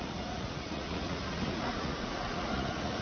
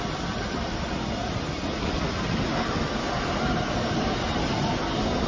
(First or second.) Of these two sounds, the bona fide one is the second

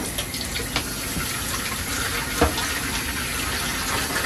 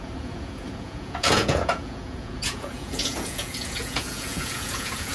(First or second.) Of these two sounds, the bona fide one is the first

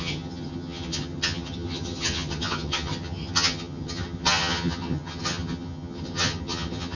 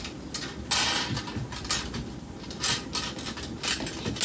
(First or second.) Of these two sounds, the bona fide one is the second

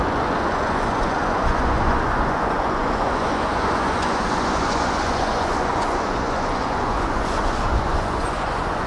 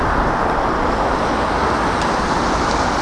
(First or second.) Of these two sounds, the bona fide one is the second